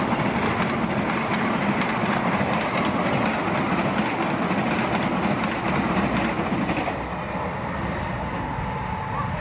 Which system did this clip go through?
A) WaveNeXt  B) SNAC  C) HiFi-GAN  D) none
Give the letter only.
D